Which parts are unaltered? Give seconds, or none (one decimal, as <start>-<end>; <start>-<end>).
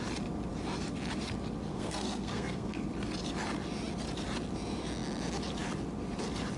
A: 0.0-1.7; 2.8-6.6